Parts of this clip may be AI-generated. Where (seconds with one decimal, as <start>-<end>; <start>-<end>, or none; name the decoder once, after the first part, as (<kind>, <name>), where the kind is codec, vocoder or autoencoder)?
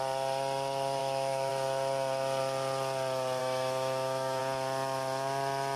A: 1.0-1.5 (autoencoder, DAC-VAE); 3.4-4.4